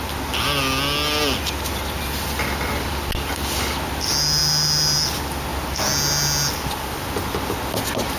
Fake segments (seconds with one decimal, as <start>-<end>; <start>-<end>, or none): none